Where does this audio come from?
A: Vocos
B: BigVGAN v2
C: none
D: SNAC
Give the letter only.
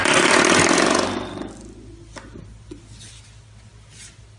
C